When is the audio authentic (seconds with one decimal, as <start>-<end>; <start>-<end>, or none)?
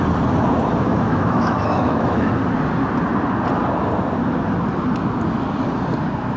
0.0-0.9; 2.3-6.4